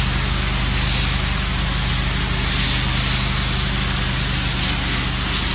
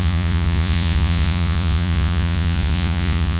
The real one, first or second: first